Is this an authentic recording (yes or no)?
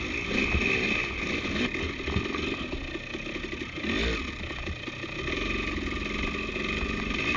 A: yes